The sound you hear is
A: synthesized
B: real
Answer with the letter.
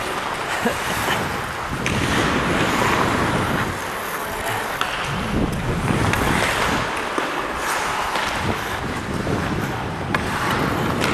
B